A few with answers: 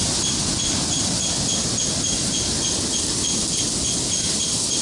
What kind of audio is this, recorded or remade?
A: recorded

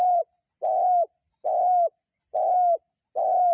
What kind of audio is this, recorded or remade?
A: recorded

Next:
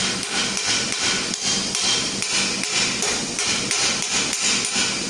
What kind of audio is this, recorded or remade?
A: recorded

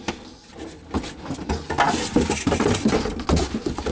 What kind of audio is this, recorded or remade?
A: recorded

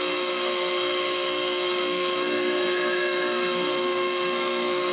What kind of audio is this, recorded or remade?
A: remade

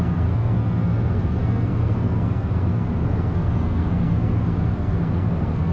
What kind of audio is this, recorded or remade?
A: remade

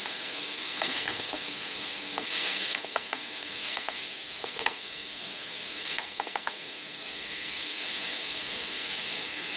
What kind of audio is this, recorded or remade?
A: remade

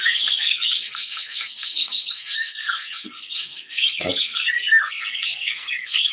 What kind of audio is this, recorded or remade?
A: remade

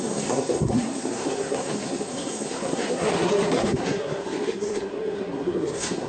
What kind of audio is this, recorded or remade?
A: remade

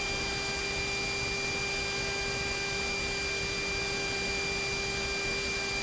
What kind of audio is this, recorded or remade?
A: recorded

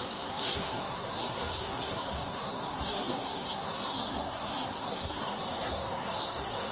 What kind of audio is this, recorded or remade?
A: remade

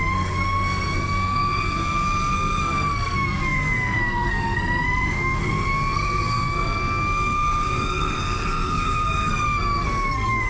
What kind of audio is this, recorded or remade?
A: remade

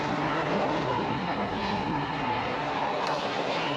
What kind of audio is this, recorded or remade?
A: remade